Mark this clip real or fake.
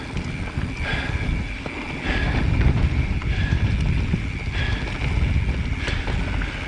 real